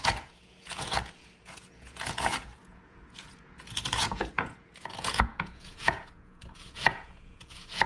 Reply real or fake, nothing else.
fake